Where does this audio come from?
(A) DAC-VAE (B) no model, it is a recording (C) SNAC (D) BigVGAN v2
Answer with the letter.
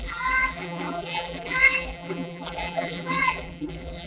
D